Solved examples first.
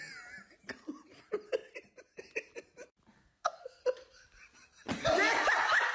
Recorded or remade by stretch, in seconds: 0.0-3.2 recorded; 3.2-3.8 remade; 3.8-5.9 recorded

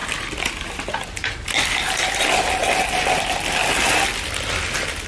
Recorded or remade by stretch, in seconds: 0.0-5.1 recorded